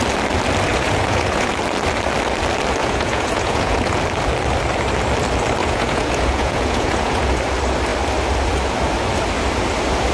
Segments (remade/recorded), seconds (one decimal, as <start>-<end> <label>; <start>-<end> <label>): 0.0-0.7 recorded; 0.7-1.5 remade; 1.5-2.8 recorded; 2.8-4.0 remade; 4.0-5.6 recorded; 5.6-7.3 remade; 7.3-10.1 recorded